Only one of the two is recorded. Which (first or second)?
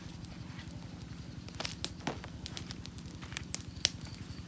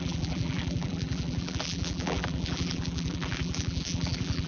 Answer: first